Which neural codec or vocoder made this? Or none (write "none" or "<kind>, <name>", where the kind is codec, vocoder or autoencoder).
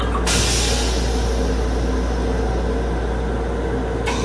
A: none